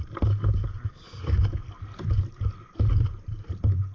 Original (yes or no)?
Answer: yes